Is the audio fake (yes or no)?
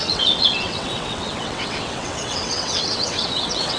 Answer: yes